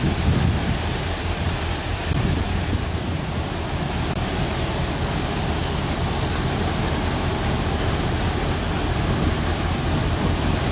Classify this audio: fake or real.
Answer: real